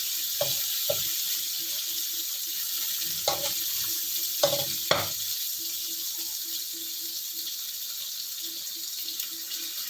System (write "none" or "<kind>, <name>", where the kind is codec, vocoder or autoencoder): none